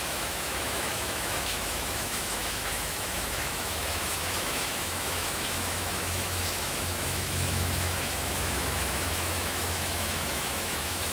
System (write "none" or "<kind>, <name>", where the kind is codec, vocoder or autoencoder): autoencoder, DAC-VAE